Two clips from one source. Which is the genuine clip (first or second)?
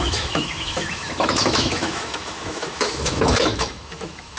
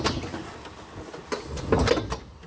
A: second